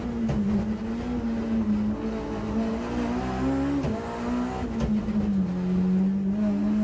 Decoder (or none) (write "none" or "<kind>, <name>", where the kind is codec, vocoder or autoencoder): none